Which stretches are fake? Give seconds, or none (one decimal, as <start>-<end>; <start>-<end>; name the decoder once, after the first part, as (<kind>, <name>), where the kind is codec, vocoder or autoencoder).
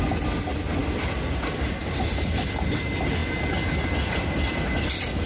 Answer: none